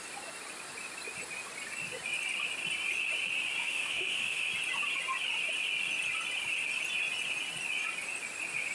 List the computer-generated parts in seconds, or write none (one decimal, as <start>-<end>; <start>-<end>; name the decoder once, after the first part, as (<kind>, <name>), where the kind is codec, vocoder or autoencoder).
3.6-4.5 (autoencoder, DAC-VAE)